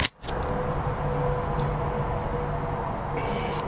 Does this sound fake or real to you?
real